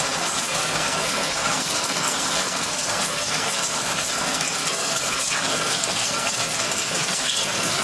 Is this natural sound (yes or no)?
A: no